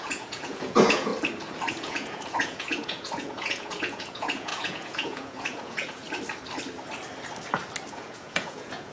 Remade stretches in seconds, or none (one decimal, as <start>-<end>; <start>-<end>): 0.0-1.1; 1.7-6.0; 7.9-8.9